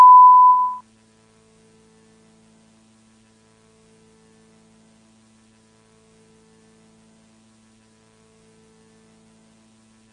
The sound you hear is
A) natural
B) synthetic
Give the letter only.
A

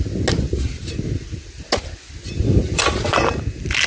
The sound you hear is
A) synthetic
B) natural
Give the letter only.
B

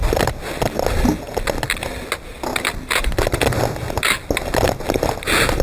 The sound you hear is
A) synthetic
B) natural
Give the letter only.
B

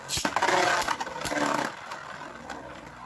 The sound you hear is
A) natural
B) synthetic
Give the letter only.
A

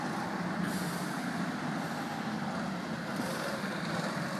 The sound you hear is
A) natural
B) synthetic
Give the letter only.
A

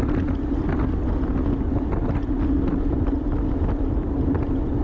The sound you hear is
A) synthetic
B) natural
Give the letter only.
B